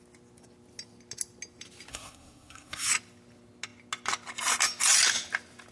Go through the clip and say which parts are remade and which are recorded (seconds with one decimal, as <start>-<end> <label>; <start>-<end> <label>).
0.0-1.9 recorded; 1.9-2.9 remade; 2.9-5.7 recorded